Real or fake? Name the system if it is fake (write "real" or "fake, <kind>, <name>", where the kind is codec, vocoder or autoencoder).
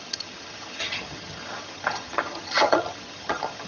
fake, vocoder, HiFi-GAN